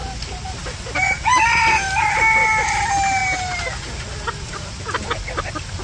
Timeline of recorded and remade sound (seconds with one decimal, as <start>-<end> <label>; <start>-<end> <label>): 0.0-5.8 recorded

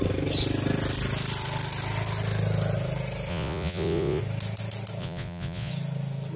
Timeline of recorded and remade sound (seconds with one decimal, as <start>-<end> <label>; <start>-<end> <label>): 0.0-3.3 recorded; 3.3-4.2 remade; 4.2-5.0 recorded; 5.0-5.7 remade; 5.7-6.4 recorded

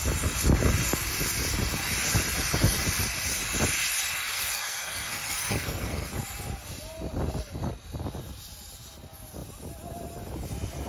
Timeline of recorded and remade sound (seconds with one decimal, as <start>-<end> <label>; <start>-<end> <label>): 0.0-4.3 recorded; 4.3-6.1 remade; 6.1-10.9 recorded

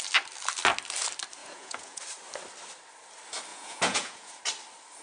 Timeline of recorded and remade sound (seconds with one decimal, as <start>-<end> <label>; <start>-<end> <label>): 0.0-1.4 recorded; 1.4-2.0 remade; 2.0-3.5 recorded; 3.5-4.4 remade; 4.4-5.0 recorded

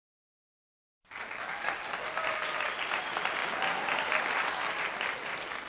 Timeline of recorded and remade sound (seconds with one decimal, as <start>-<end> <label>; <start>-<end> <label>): 0.0-5.7 recorded

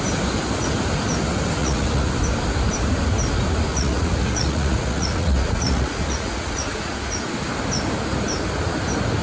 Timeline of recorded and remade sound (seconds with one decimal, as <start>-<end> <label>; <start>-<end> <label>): 0.0-1.6 recorded; 1.6-2.1 remade; 2.1-3.7 recorded; 3.7-7.3 remade; 7.3-9.2 recorded